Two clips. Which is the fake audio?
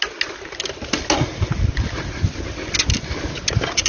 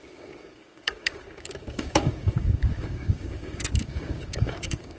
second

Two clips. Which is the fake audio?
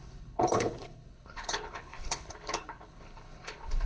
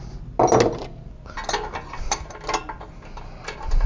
first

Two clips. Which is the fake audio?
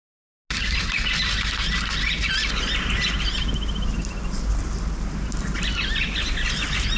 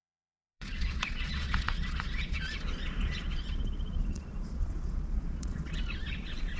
second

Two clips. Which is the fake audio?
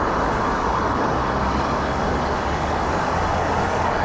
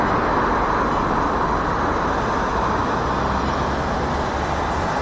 first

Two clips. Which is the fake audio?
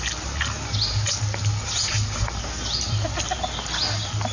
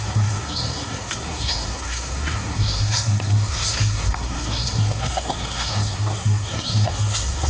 second